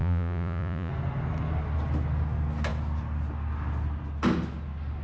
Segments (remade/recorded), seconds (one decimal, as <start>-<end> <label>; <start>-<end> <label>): 0.0-0.9 remade; 0.9-5.0 recorded